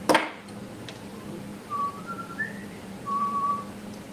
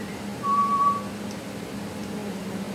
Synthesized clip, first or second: first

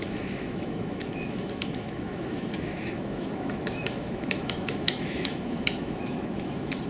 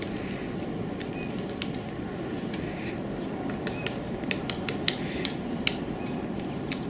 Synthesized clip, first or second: first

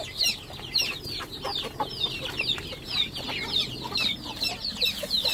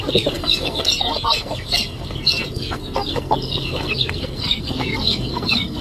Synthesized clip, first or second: second